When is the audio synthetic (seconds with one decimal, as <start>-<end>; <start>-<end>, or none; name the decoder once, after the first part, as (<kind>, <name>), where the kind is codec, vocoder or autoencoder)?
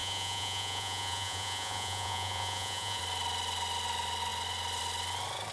0.0-3.0 (vocoder, Vocos)